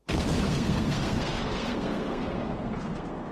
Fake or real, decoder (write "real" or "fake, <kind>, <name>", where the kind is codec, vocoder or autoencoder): fake, codec, SNAC